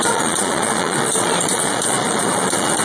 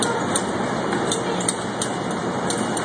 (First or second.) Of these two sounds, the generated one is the first